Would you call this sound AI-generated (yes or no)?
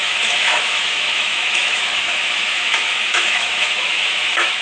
yes